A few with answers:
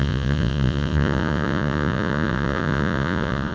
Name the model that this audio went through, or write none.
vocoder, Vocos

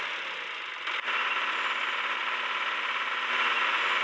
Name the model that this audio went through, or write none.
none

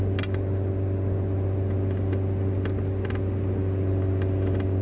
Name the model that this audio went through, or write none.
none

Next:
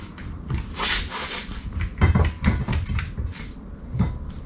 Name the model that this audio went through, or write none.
none